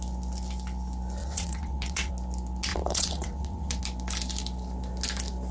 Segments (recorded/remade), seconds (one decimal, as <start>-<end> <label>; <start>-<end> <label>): 0.0-1.2 recorded; 1.2-2.1 remade; 2.1-2.7 recorded; 2.7-3.8 remade; 3.8-5.5 recorded